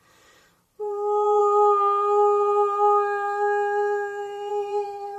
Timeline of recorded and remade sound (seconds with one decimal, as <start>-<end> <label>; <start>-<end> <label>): 0.0-1.4 remade; 1.4-4.5 recorded; 4.5-5.2 remade